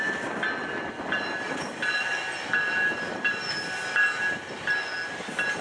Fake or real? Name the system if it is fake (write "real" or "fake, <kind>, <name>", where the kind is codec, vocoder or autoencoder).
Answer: real